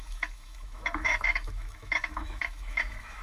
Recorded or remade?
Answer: remade